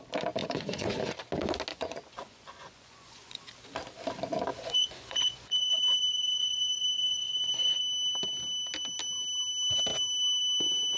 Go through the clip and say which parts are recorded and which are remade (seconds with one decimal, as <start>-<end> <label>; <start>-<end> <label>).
0.0-0.4 recorded; 0.4-1.0 remade; 1.0-1.7 recorded; 1.7-3.5 remade; 3.5-4.5 recorded; 4.5-7.8 remade; 7.8-11.0 recorded